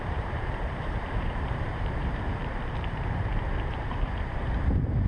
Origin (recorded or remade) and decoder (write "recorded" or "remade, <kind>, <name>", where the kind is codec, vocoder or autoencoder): remade, vocoder, BigVGAN v2